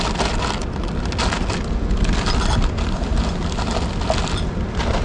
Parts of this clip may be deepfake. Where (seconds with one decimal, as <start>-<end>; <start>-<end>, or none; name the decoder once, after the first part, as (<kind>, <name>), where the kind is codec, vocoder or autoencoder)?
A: none